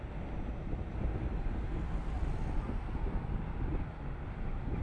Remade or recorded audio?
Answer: recorded